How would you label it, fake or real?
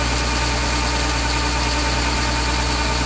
real